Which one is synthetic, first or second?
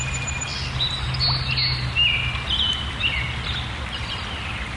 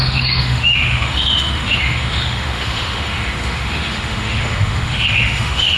second